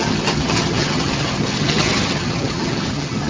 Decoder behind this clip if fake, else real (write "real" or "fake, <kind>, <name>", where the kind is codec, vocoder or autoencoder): fake, vocoder, HiFi-GAN